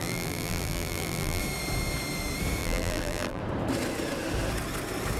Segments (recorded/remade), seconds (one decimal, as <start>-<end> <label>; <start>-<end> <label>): 0.0-1.4 remade; 1.4-2.6 recorded; 2.6-3.4 remade; 3.4-5.2 recorded